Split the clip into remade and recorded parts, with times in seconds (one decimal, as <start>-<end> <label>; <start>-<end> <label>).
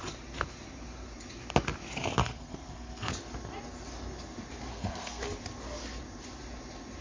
0.0-2.2 recorded; 2.2-3.1 remade; 3.1-4.7 recorded; 4.7-5.2 remade; 5.2-7.0 recorded